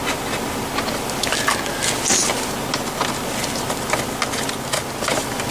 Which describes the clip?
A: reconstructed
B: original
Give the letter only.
B